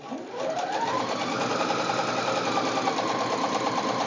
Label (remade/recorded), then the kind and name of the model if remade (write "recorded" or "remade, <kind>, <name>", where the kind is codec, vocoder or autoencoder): recorded